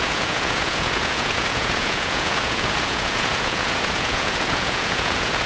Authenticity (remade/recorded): remade